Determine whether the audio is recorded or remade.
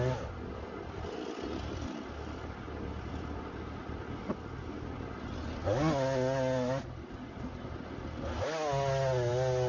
recorded